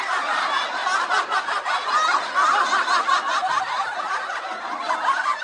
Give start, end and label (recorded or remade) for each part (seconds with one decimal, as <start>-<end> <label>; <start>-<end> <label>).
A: 0.0-5.4 recorded